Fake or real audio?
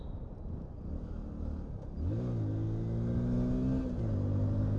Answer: real